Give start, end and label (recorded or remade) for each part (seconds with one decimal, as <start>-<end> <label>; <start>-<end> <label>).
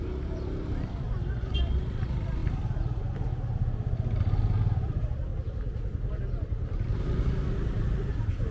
0.0-5.3 remade; 5.3-8.1 recorded; 8.1-8.5 remade